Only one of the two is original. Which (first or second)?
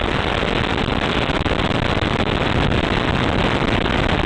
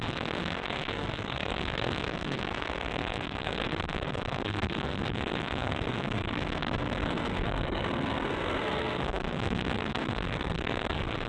first